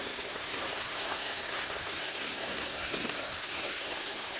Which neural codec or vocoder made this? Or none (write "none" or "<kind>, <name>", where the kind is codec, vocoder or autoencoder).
codec, SNAC